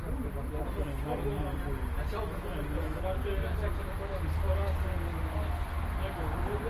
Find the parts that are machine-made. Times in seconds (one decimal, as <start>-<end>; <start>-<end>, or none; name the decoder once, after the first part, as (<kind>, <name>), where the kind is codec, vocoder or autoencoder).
none